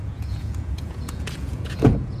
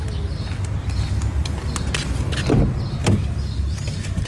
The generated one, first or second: first